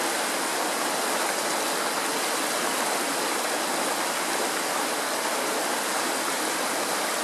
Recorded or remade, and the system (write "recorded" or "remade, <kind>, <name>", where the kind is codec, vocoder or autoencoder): recorded